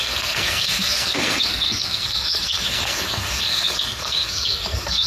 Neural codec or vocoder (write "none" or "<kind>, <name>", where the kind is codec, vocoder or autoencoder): codec, SNAC